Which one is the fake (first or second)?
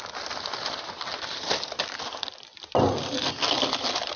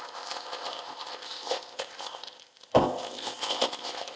second